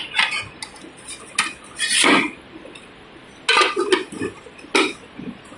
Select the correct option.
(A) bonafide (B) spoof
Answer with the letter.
A